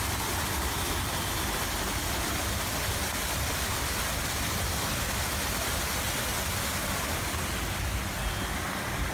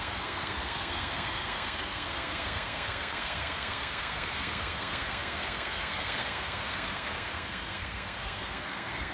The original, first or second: first